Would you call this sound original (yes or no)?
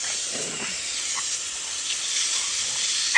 yes